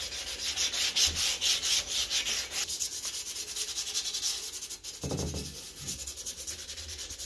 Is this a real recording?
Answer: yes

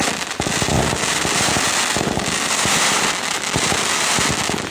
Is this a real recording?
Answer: no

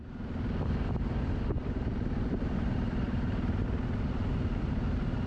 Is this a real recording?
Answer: yes